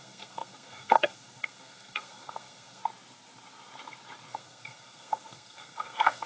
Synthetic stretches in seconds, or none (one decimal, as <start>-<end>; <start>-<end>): 0.0-2.8; 4.3-6.3